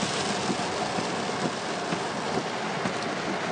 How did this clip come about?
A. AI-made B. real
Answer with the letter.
B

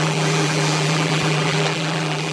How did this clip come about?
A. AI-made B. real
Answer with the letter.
A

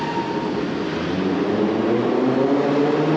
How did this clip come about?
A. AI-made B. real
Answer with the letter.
B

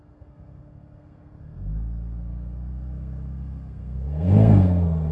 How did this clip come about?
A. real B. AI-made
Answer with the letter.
B